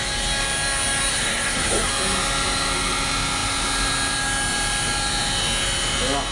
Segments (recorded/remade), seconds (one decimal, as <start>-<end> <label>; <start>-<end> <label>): 0.0-1.1 recorded; 1.1-1.9 remade; 1.9-6.3 recorded